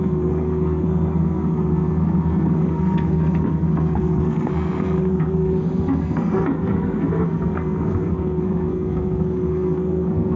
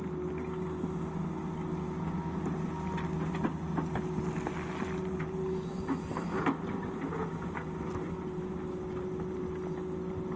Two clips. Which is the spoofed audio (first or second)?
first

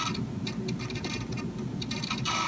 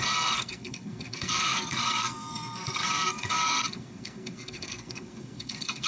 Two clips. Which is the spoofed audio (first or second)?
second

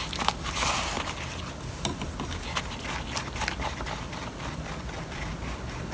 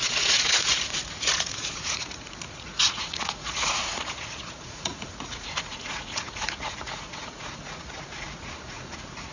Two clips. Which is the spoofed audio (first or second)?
second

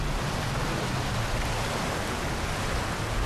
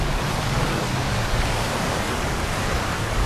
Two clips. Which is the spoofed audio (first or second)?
second